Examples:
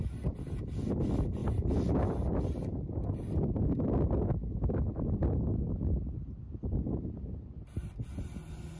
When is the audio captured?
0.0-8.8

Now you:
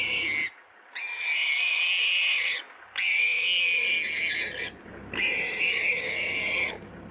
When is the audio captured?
0.0-7.1

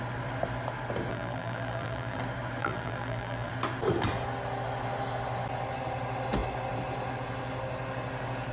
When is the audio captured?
0.0-1.1; 2.2-2.6; 3.5-8.5